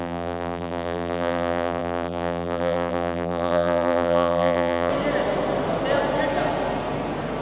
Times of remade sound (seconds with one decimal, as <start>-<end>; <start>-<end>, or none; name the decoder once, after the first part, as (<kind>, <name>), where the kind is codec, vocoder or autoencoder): 0.0-4.9 (vocoder, BigVGAN v2)